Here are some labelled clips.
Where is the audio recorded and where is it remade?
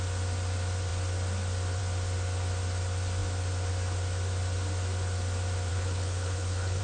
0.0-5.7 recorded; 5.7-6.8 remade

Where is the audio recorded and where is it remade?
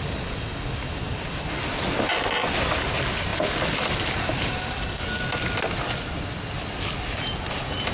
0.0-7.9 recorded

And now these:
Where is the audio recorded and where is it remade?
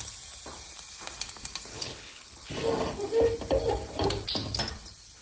0.0-1.7 recorded; 1.7-2.5 remade; 2.5-5.2 recorded